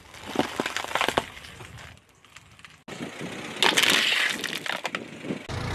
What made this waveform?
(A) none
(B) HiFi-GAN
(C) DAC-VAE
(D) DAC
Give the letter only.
A